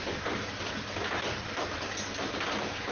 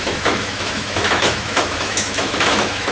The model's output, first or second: second